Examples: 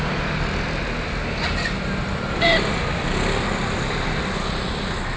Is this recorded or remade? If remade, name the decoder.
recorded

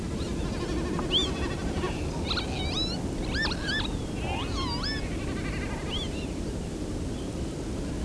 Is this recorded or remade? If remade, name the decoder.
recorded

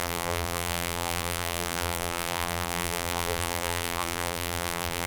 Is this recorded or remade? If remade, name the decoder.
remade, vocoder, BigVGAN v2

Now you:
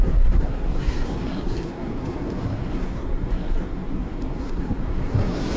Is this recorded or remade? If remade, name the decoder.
remade, codec, SNAC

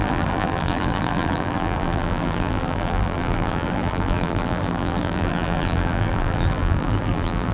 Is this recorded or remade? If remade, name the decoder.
remade, vocoder, BigVGAN v2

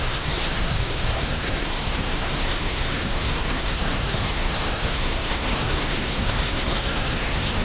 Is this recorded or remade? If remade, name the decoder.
remade, codec, SNAC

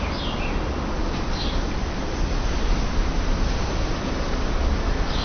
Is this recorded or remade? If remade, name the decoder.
recorded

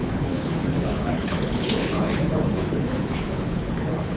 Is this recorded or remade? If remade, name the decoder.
remade, codec, HILCodec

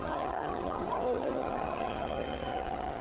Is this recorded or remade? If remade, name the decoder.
remade, vocoder, HiFi-GAN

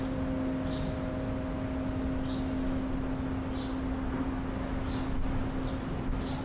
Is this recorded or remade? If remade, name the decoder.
recorded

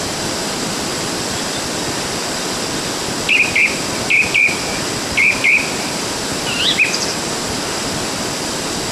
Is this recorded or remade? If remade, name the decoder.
recorded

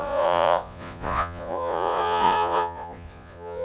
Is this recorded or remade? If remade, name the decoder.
remade, vocoder, Vocos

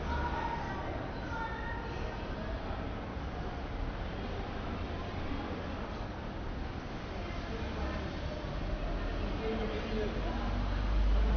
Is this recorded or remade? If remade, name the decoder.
recorded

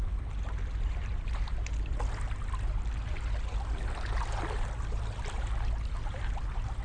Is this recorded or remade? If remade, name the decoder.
recorded